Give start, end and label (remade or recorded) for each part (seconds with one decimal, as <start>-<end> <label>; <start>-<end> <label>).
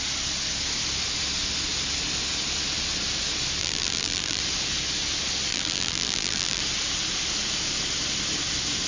0.0-3.6 recorded; 3.6-4.4 remade; 4.4-5.5 recorded; 5.5-6.6 remade; 6.6-8.9 recorded